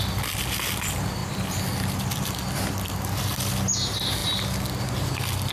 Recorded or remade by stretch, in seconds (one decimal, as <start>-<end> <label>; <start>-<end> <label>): 0.0-5.5 recorded